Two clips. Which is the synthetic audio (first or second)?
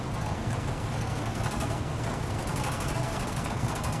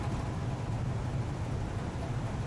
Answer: first